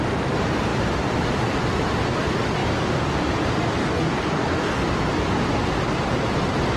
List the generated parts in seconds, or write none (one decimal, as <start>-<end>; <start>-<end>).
3.8-4.8